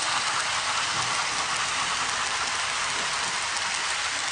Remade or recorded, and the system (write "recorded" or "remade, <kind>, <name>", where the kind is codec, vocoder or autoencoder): recorded